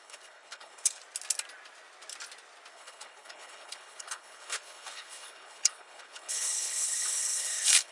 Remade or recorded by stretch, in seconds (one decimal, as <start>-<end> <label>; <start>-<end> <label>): 0.0-1.0 remade; 1.0-2.7 recorded; 2.7-7.9 remade